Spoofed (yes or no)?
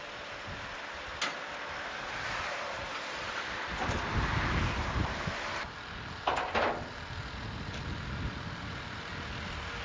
no